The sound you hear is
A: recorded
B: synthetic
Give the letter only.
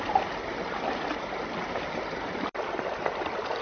A